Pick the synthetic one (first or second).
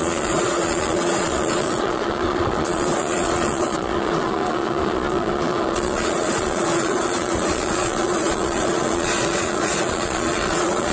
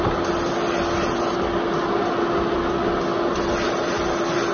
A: first